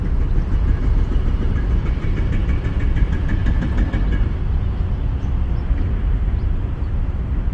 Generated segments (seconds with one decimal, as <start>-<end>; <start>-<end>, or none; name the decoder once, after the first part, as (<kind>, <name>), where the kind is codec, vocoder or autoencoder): none